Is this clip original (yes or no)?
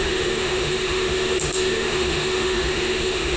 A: no